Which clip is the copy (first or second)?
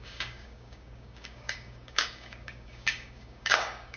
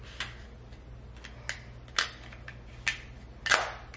first